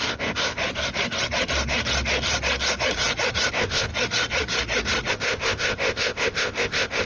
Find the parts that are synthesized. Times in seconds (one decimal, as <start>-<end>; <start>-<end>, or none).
0.0-0.6; 3.5-3.9; 5.1-7.1